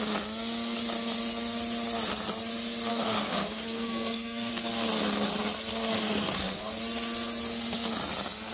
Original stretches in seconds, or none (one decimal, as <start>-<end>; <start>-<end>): 0.0-2.9; 4.5-5.9; 6.7-8.5